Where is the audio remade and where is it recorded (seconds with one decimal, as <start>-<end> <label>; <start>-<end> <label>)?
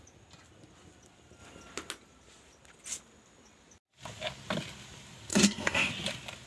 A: 0.0-5.3 recorded; 5.3-5.9 remade; 5.9-6.5 recorded